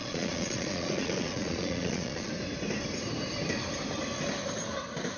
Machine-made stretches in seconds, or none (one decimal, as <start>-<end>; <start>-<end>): 0.0-2.3